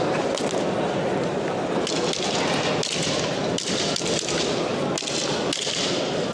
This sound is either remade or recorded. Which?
recorded